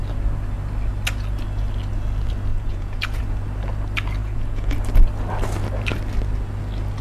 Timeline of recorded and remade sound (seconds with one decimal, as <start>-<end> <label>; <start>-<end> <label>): 0.0-2.5 recorded; 2.5-3.2 remade; 3.2-4.2 recorded; 4.2-4.8 remade; 4.8-7.0 recorded

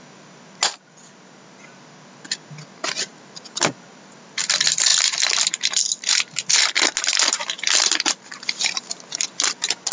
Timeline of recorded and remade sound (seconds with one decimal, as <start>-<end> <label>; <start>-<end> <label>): 0.0-9.9 recorded

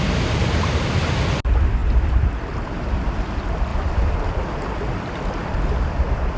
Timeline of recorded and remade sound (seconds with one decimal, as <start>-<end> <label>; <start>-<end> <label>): 0.0-3.7 recorded; 3.7-5.5 remade; 5.5-6.4 recorded

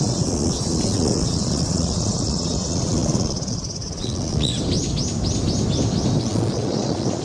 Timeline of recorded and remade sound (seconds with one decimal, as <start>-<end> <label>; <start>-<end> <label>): 0.0-4.5 remade; 4.5-6.2 recorded; 6.2-7.2 remade

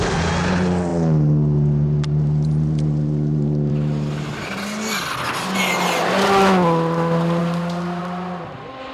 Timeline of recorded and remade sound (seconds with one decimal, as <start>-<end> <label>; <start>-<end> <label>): 0.0-8.9 recorded

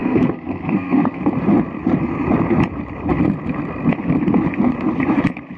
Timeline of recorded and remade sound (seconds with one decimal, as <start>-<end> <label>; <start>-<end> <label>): 0.0-1.2 remade; 1.2-5.6 recorded